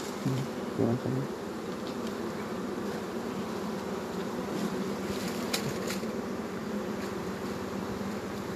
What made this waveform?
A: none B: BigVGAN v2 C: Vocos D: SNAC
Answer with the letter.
B